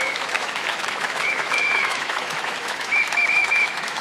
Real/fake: fake